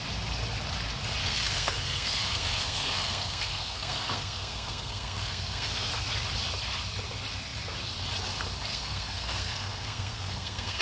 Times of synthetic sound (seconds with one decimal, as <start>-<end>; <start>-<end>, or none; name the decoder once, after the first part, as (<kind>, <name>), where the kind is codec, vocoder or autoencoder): 1.2-5.9 (codec, SNAC); 8.7-10.8